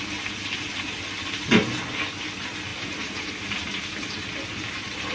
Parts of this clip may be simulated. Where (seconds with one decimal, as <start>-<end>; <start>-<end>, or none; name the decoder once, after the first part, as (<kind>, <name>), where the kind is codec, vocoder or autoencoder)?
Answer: 2.7-5.1 (vocoder, BigVGAN v2)